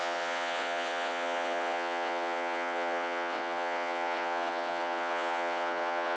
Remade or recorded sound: remade